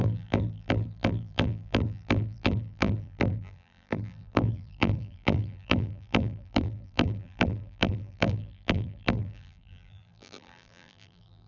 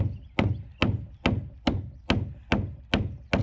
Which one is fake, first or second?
first